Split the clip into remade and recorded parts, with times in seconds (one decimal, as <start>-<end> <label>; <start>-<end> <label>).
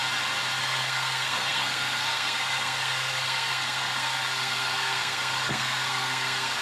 0.0-0.6 recorded; 0.6-6.6 remade